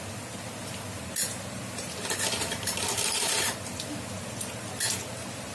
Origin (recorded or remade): recorded